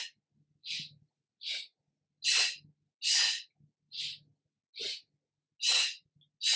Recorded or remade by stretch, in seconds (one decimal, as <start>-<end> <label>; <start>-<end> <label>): 0.0-0.6 recorded; 0.6-1.2 remade; 1.2-6.6 recorded